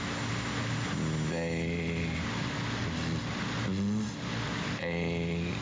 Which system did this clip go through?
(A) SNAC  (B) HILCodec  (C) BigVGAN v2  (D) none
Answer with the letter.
D